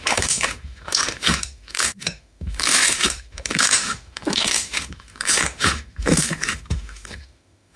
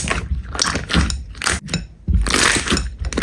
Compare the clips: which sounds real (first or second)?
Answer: second